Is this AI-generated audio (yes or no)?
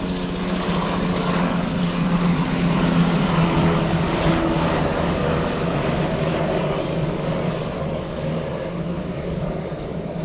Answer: yes